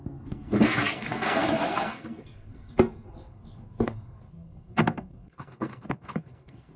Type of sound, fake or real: fake